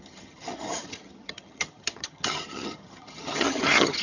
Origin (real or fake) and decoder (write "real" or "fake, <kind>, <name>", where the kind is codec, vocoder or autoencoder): fake, vocoder, HiFi-GAN